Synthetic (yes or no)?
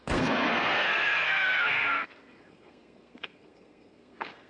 yes